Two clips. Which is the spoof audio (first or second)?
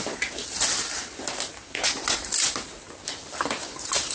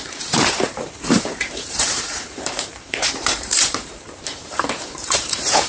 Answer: second